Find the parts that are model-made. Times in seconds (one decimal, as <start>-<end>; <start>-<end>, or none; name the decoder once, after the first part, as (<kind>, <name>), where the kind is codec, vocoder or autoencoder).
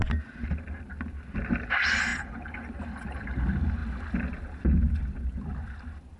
none